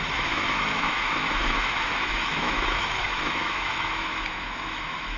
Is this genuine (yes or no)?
no